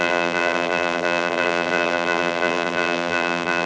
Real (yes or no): no